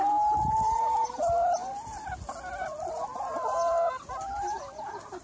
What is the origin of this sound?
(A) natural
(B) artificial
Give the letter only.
A